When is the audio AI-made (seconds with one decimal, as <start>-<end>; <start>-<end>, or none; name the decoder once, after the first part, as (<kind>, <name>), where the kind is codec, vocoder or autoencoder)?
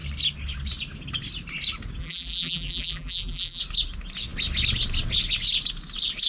2.0-3.6 (vocoder, BigVGAN v2)